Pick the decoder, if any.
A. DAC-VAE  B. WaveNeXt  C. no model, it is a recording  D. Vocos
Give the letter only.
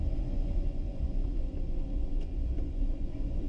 D